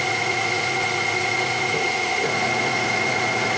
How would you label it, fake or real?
fake